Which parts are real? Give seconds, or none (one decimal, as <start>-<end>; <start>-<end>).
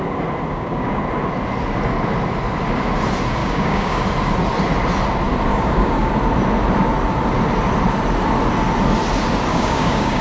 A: 0.0-0.5; 1.0-3.4; 4.0-5.5; 6.1-9.5